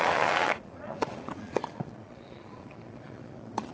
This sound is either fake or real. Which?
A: fake